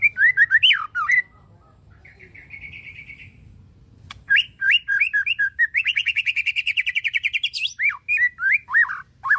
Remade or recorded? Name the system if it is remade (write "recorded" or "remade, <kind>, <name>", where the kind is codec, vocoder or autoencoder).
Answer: recorded